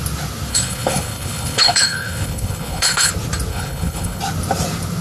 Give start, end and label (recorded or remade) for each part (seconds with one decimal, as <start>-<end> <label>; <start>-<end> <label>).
0.0-0.5 recorded; 0.5-3.1 remade; 3.1-3.5 recorded; 3.5-4.2 remade; 4.2-5.0 recorded